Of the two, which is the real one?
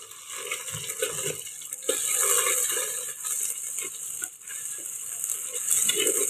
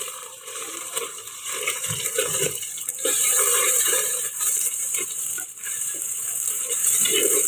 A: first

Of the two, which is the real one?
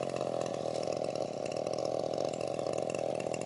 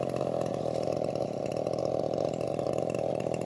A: first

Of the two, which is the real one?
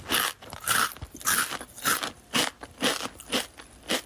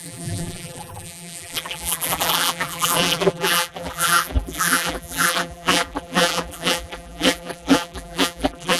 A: first